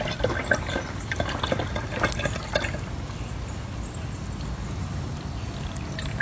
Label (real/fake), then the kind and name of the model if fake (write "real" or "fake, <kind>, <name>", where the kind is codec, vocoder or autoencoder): real